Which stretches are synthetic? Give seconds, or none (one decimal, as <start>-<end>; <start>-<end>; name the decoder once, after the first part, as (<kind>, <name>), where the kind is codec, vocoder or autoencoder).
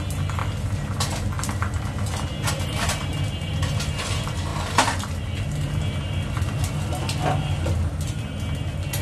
none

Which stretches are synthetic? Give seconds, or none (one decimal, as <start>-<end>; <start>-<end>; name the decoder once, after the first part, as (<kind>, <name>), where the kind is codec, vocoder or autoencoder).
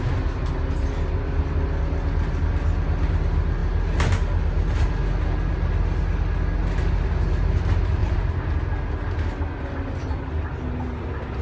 8.0-8.5 (vocoder, BigVGAN v2)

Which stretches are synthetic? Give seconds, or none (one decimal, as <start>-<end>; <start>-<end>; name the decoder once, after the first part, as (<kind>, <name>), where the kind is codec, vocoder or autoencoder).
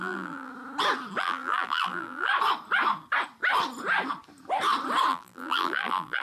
0.0-0.5 (vocoder, BigVGAN v2); 1.2-2.3; 5.1-6.2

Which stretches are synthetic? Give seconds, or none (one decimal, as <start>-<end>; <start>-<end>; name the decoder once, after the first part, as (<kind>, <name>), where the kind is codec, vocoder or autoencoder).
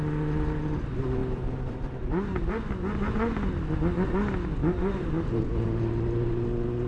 1.2-2.5 (vocoder, BigVGAN v2); 4.6-5.9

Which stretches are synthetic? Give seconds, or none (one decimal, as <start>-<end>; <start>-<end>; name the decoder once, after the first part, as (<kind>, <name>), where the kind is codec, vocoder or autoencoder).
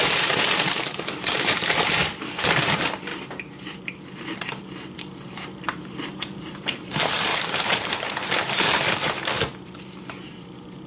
0.0-10.9 (vocoder, BigVGAN v2)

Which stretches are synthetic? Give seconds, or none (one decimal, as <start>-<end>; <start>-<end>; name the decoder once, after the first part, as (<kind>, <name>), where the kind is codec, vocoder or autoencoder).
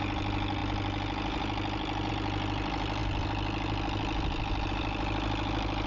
none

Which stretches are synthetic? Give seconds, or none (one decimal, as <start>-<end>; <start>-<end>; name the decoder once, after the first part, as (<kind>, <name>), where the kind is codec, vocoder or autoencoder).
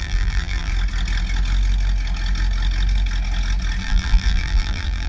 0.0-0.7 (vocoder, BigVGAN v2); 3.8-5.1